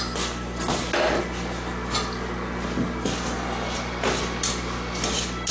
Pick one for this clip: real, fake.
real